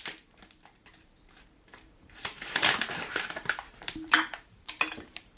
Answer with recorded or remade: remade